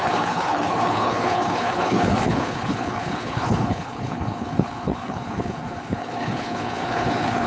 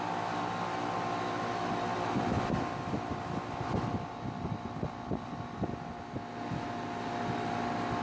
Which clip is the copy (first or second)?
first